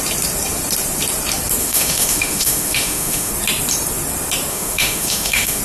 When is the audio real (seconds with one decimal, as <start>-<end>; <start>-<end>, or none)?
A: 0.0-1.6; 3.3-4.5